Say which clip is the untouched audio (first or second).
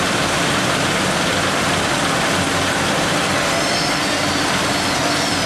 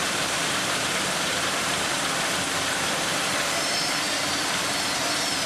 first